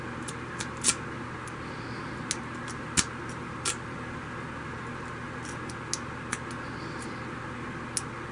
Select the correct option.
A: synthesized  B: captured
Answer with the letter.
B